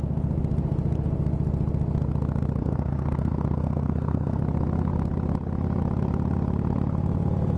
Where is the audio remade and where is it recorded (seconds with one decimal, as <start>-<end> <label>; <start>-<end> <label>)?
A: 0.0-2.6 recorded; 2.6-4.4 remade; 4.4-7.6 recorded